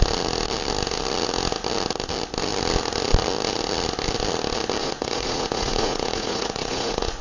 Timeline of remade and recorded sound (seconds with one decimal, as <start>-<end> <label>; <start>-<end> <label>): 0.0-4.8 recorded; 4.8-7.2 remade